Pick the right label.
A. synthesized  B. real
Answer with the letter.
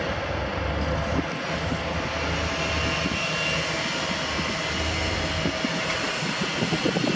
B